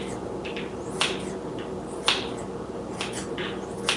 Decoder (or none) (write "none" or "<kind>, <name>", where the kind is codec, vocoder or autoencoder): none